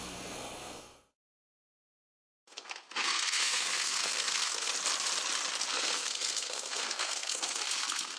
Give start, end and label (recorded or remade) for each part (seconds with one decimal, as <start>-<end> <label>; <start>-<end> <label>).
0.0-4.7 remade; 4.7-5.7 recorded; 5.7-8.2 remade